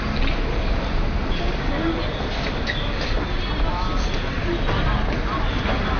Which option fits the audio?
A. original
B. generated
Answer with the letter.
A